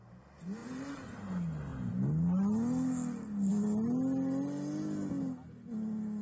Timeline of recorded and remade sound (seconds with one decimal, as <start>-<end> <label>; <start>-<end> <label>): 0.0-0.6 recorded; 0.6-1.2 remade; 1.2-6.2 recorded